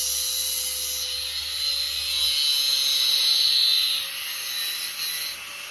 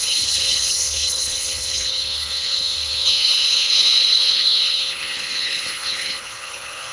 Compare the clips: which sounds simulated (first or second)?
second